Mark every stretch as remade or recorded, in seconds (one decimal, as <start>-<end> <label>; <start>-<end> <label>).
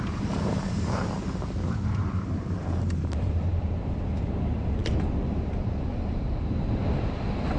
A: 0.0-7.6 remade